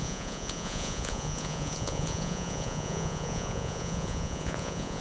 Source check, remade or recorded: remade